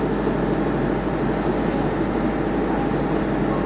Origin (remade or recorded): recorded